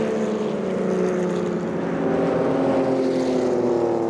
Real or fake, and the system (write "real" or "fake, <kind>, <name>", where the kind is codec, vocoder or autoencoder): real